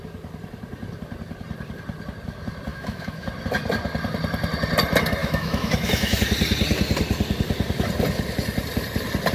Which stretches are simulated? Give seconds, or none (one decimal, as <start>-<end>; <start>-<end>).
2.7-3.3; 5.2-6.2

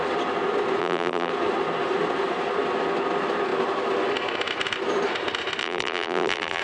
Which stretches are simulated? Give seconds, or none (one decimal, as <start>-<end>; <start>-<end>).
0.8-1.3; 5.6-6.6

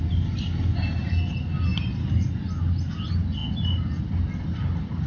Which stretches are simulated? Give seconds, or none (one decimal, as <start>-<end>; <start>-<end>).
none

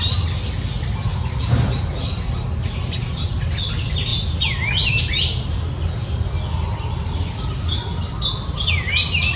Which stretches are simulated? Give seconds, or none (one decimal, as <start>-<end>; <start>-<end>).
none

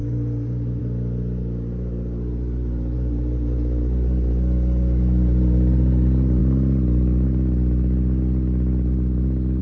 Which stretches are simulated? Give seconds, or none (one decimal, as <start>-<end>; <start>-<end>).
none

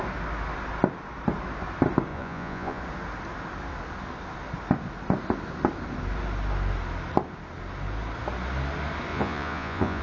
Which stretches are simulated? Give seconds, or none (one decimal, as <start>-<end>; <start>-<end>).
2.1-2.8; 9.1-10.0

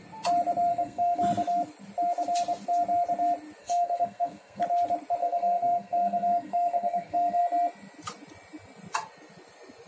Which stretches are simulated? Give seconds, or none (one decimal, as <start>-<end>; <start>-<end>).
0.7-1.2; 3.6-4.6; 5.2-7.4

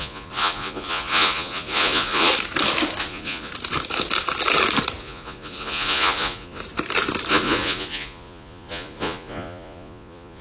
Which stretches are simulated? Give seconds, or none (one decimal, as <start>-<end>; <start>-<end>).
0.0-2.3; 3.0-3.5; 5.0-6.6; 7.3-10.4